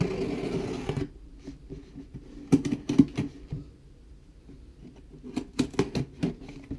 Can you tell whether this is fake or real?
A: real